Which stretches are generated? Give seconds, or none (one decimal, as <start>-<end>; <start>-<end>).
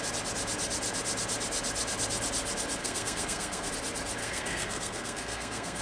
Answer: 2.8-3.7; 4.2-5.8